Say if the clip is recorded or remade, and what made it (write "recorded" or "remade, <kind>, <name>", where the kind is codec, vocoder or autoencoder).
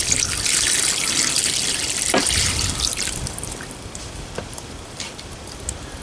recorded